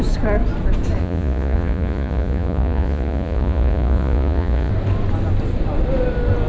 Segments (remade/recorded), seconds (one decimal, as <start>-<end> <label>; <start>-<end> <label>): 0.0-1.0 recorded; 1.0-4.7 remade; 4.7-6.5 recorded